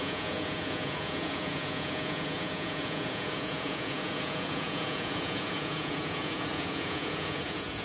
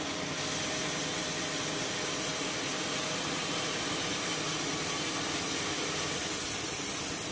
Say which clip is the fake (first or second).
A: first